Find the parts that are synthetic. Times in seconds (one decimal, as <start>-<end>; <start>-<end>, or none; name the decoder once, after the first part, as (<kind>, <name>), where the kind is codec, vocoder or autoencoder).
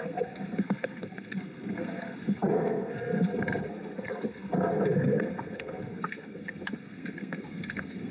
0.0-8.1 (codec, SNAC)